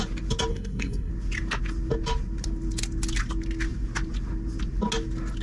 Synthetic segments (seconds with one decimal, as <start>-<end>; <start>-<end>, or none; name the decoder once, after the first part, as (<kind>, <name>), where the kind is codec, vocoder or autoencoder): 0.5-1.1 (codec, SNAC)